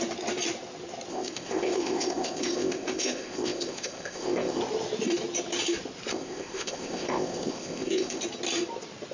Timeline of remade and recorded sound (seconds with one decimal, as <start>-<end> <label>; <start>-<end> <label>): 0.0-1.1 recorded; 1.1-4.6 remade; 4.6-6.1 recorded; 6.1-8.2 remade; 8.2-9.1 recorded